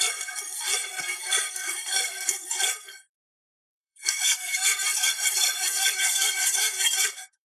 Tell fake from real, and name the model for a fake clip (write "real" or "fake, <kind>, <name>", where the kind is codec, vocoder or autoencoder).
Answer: fake, codec, SNAC